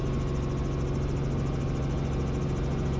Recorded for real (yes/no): yes